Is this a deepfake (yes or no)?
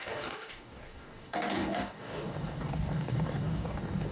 yes